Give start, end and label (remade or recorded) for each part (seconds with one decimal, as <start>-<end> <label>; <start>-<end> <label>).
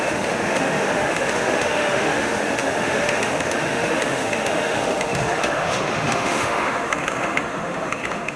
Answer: 0.0-8.4 remade